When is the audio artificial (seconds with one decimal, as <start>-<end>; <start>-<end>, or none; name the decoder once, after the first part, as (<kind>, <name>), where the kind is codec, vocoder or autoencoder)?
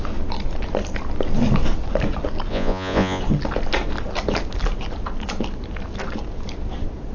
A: 2.5-3.2 (vocoder, Vocos)